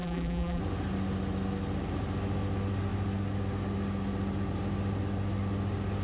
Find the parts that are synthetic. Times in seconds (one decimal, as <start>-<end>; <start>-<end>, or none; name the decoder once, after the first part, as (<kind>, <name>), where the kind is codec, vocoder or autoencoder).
0.0-0.6 (vocoder, BigVGAN v2)